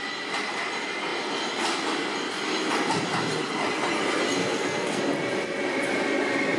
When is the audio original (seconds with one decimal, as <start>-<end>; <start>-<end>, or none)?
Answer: 0.0-4.4; 5.0-6.6